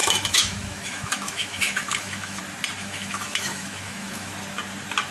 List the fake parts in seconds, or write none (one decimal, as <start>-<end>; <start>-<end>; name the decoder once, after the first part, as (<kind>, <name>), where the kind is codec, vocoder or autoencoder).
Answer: 0.0-2.4 (autoencoder, DAC-VAE); 2.8-4.3